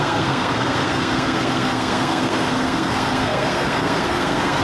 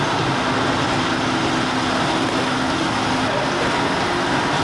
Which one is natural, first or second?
second